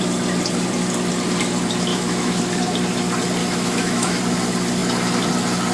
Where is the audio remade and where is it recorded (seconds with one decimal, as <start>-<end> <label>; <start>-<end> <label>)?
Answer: 0.0-1.9 recorded; 1.9-2.4 remade; 2.4-3.4 recorded; 3.4-4.2 remade; 4.2-5.7 recorded